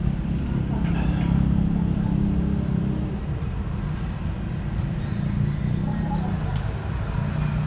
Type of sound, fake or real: real